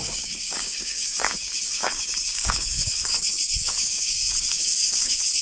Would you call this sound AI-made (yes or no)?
yes